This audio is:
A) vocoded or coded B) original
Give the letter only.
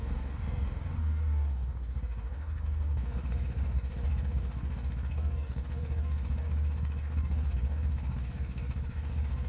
A